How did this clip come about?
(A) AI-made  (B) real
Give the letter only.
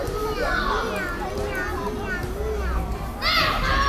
B